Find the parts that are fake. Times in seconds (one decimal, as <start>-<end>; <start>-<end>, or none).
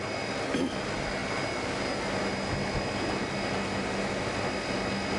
none